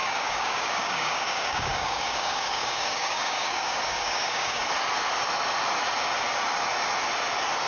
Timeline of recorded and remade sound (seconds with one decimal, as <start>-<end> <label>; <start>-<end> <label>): 0.0-4.6 remade; 4.6-7.7 recorded

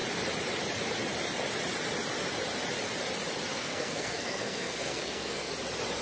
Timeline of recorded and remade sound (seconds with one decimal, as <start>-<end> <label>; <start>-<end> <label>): 0.0-3.5 recorded; 3.5-5.5 remade; 5.5-6.0 recorded

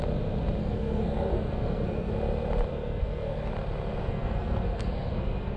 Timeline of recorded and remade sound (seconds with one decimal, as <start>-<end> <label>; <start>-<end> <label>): 0.0-0.6 recorded; 0.6-2.1 remade; 2.1-2.7 recorded; 2.7-3.5 remade; 3.5-4.0 recorded; 4.0-5.6 remade

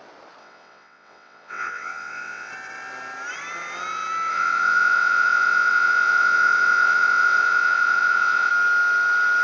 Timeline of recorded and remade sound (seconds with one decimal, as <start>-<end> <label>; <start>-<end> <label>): 0.0-0.4 recorded; 0.4-2.5 remade; 2.5-4.3 recorded; 4.3-8.5 remade; 8.5-9.4 recorded

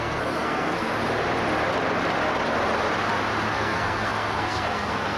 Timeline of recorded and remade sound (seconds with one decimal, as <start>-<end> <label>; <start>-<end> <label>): 0.0-0.9 remade; 0.9-3.5 recorded; 3.5-5.2 remade